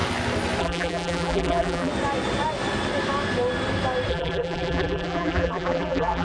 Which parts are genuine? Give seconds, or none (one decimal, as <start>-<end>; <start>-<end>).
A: 0.0-0.6; 1.9-4.1